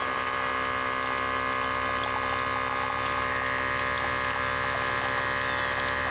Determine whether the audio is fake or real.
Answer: real